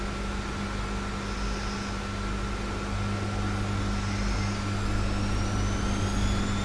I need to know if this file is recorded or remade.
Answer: recorded